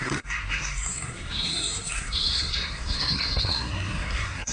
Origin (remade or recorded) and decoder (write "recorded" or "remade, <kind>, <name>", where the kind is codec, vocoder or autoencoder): remade, codec, SNAC